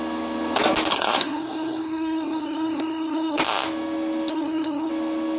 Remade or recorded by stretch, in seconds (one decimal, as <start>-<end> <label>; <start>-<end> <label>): 0.0-0.9 recorded; 0.9-3.4 remade; 3.4-4.3 recorded; 4.3-4.9 remade; 4.9-5.4 recorded